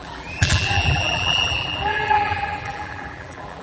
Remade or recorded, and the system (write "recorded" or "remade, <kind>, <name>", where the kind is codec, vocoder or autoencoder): remade, vocoder, BigVGAN v2